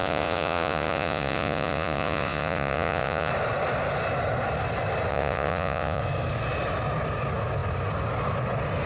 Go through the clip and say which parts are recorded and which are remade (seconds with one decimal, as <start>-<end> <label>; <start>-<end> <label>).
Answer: 0.0-3.3 remade; 3.3-5.1 recorded; 5.1-6.0 remade; 6.0-8.9 recorded